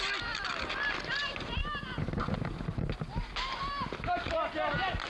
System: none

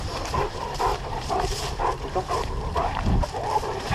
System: vocoder, BigVGAN v2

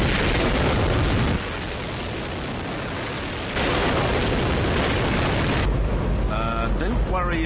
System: none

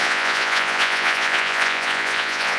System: vocoder, Vocos